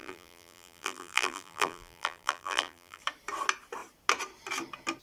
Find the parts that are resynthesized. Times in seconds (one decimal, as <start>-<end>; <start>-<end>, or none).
0.0-3.0